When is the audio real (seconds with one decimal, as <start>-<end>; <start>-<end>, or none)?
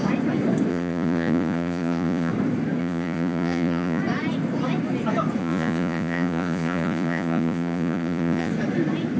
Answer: 0.0-0.7; 2.3-2.8; 4.0-5.4; 8.5-9.2